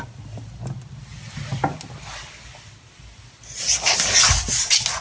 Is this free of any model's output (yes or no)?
yes